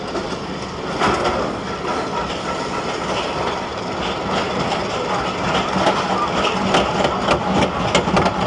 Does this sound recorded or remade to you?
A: recorded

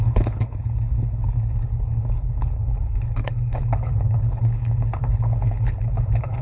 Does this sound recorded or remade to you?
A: remade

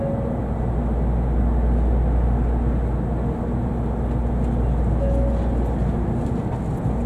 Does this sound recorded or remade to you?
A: recorded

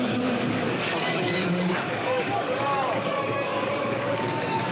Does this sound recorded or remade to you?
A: remade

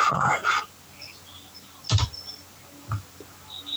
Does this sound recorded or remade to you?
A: recorded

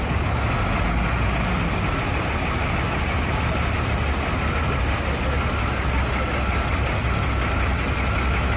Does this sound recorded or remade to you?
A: recorded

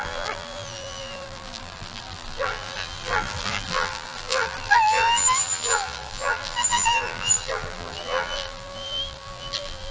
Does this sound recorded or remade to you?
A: remade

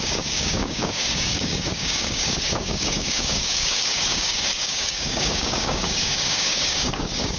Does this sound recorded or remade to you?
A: remade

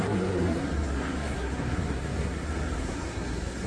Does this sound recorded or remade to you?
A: remade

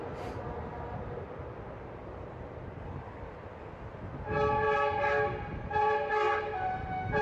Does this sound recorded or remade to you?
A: recorded